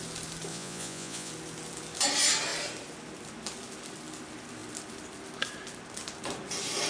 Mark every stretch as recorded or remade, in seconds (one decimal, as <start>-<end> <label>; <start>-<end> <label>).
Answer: 0.0-0.5 recorded; 0.5-1.3 remade; 1.3-6.9 recorded